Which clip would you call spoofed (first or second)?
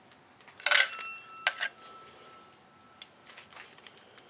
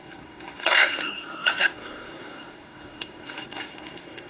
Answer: second